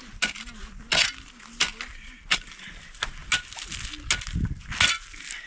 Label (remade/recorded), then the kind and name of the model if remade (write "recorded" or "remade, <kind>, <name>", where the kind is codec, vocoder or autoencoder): recorded